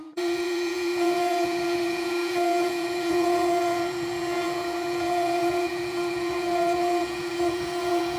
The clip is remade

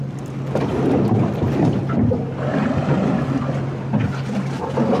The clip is recorded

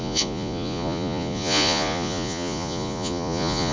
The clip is remade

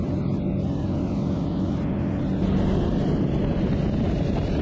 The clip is recorded